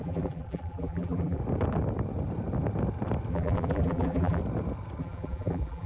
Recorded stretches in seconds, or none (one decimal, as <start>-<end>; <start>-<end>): 1.4-3.3; 4.4-5.0